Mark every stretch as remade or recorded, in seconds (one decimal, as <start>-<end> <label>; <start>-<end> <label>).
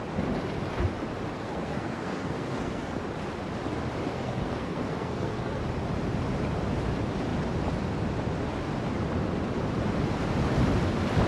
0.0-1.3 recorded; 1.3-3.0 remade; 3.0-4.1 recorded; 4.1-5.6 remade; 5.6-11.3 recorded